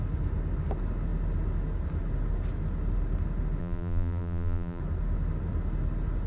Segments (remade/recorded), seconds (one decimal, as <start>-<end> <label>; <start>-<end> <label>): 0.0-3.6 recorded; 3.6-4.8 remade; 4.8-6.3 recorded